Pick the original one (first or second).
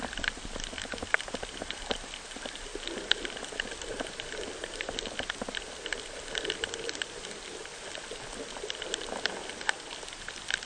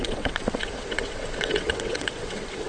first